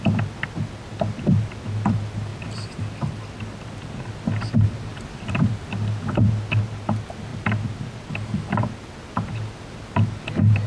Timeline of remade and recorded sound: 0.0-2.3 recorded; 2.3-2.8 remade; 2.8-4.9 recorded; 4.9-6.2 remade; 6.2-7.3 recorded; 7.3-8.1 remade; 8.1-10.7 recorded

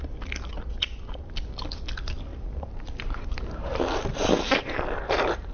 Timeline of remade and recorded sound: 0.0-2.3 recorded; 2.3-5.5 remade

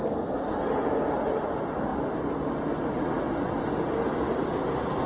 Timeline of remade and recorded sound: 0.0-5.1 recorded

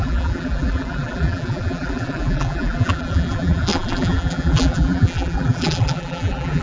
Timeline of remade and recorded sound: 0.0-6.6 remade